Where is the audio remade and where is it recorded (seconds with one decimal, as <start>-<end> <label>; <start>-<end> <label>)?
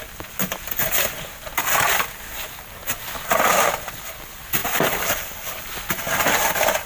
0.0-4.6 recorded; 4.6-5.8 remade; 5.8-6.9 recorded